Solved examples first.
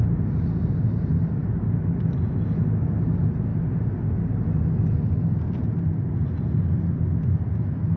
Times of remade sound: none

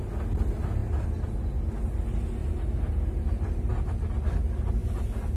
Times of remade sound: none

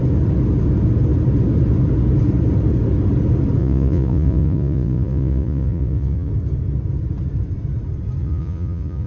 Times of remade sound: 3.6-6.3 (vocoder, Vocos); 8.2-9.1

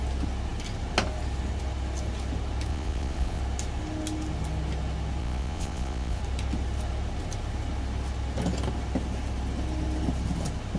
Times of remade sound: 2.7-3.4 (vocoder, Vocos); 5.2-6.2

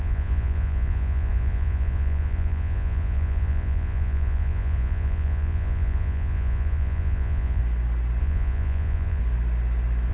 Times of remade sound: 0.0-7.6 (vocoder, Vocos); 8.2-9.2